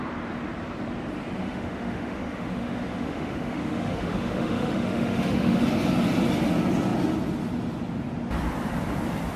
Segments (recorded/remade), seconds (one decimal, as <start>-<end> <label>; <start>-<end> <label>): 0.0-1.4 recorded; 1.4-5.6 remade; 5.6-9.4 recorded